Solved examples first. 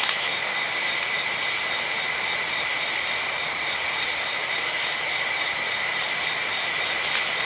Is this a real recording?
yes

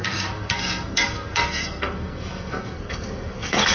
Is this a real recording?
no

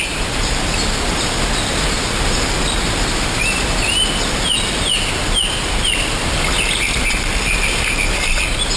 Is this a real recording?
yes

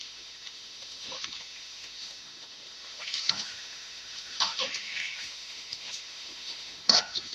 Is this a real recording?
no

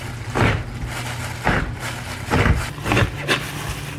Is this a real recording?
no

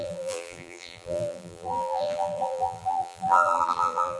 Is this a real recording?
no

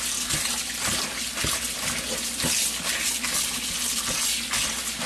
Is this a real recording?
yes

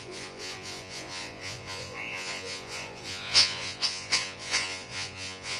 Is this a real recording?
no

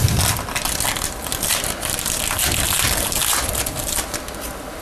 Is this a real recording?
yes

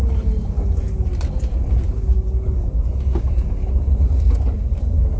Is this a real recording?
yes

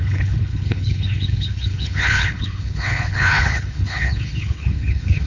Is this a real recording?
no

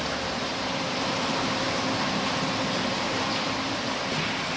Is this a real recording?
no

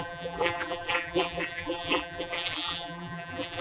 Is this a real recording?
no